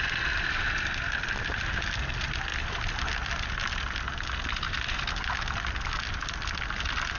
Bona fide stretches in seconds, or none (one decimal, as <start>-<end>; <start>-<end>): 0.0-7.2